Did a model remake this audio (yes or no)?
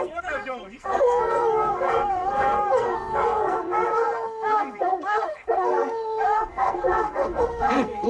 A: yes